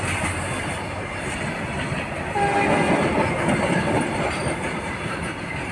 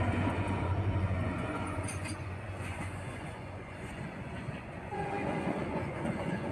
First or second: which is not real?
second